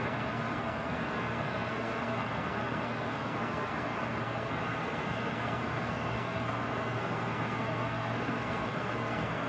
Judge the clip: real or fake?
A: fake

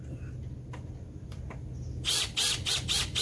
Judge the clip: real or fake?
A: real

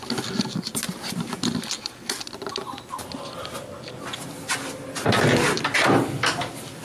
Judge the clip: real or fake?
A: real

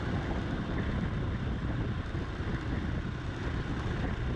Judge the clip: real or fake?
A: real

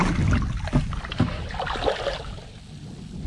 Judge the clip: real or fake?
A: real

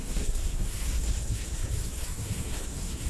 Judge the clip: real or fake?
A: fake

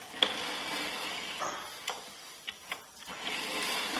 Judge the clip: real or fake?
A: real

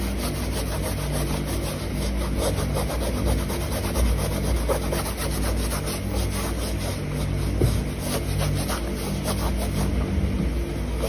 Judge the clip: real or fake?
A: real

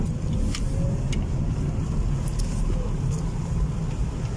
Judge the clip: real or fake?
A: real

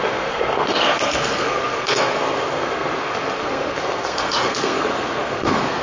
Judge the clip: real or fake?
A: fake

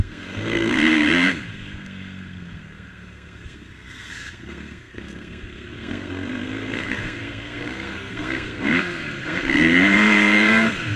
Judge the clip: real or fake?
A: fake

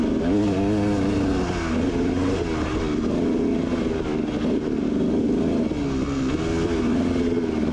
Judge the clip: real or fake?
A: real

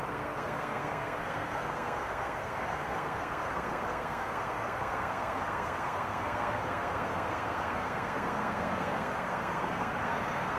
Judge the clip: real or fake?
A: fake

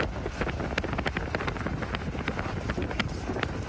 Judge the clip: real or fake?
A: real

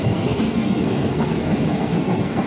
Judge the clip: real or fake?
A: fake